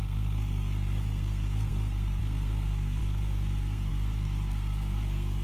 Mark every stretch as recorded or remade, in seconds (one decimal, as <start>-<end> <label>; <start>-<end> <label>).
0.0-5.4 remade